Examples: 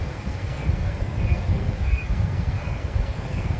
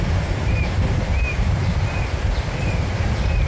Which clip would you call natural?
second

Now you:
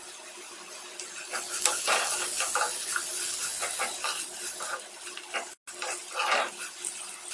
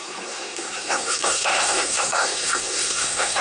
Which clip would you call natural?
first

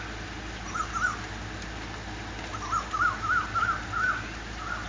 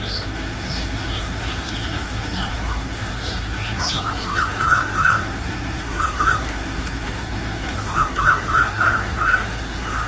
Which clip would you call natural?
first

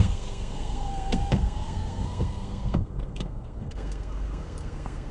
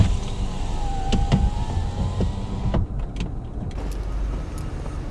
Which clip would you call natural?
second